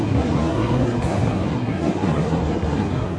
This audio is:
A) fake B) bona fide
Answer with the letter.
A